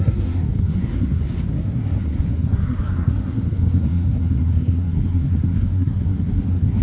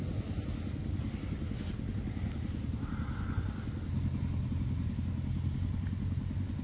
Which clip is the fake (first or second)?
first